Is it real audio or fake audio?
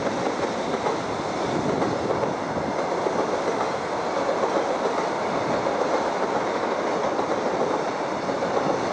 real